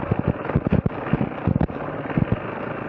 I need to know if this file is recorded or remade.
recorded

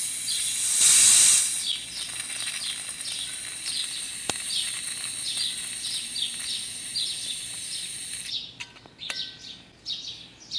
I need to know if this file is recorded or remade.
recorded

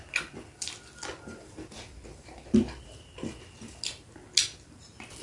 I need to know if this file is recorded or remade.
recorded